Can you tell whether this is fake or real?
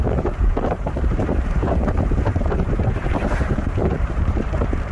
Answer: fake